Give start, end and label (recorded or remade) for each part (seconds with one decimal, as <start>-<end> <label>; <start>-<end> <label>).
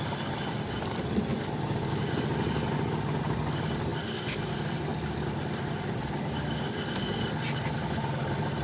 0.0-1.3 remade; 1.3-3.5 recorded; 3.5-3.9 remade; 3.9-4.4 recorded; 4.4-4.9 remade; 4.9-8.2 recorded; 8.2-8.6 remade